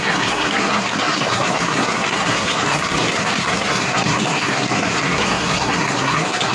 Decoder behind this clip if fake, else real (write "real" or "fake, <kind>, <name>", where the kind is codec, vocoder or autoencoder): fake, codec, SNAC